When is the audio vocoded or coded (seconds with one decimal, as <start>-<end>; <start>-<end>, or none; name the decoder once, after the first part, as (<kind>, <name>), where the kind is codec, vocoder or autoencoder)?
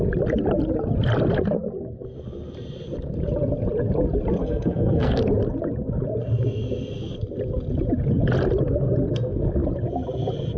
4.4-5.2 (codec, SNAC)